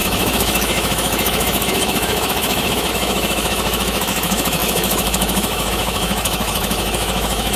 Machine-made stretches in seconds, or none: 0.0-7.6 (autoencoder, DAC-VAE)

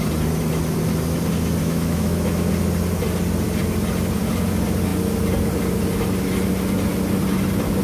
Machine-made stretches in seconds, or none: 1.6-2.5 (autoencoder, DAC-VAE)

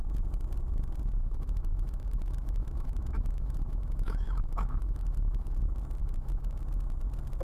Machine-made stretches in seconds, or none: 1.2-5.6 (autoencoder, DAC-VAE); 6.0-6.6